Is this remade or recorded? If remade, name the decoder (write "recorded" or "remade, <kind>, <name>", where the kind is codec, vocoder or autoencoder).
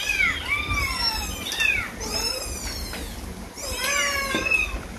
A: recorded